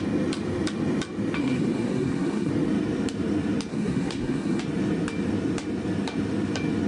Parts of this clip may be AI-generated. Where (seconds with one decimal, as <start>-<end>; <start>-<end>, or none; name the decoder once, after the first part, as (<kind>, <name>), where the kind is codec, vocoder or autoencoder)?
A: 1.4-2.5 (codec, SNAC); 3.7-4.6